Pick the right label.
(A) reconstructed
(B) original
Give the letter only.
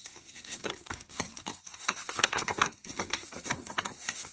A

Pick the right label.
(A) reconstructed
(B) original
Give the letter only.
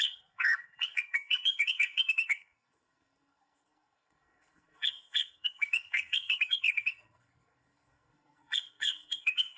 A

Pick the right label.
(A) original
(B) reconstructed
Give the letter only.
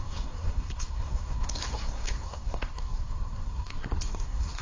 B